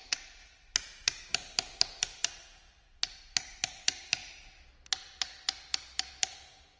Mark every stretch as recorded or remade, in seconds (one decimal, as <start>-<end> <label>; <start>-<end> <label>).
0.0-6.8 recorded